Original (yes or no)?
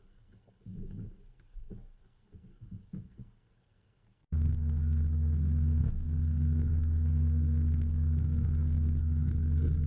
no